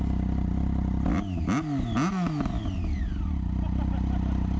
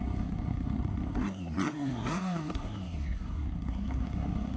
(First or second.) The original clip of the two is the first